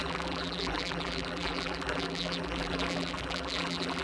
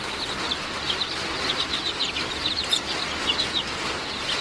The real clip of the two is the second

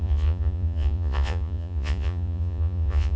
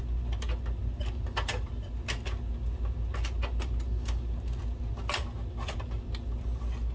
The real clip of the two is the second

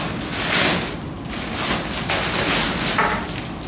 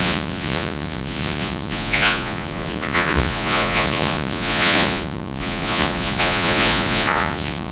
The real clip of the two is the first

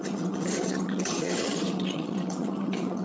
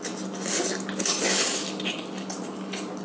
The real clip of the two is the second